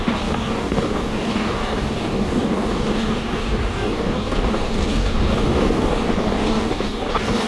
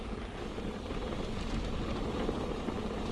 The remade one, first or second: first